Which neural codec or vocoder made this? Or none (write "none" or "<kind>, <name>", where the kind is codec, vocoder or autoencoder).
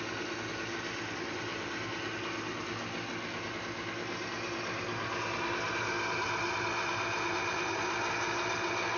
none